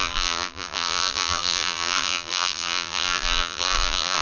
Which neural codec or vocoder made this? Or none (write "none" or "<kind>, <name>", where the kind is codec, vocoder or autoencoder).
vocoder, BigVGAN v2